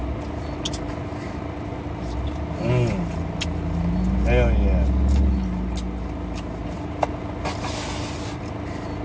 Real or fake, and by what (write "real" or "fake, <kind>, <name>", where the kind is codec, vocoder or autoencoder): real